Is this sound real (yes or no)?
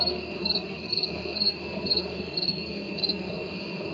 no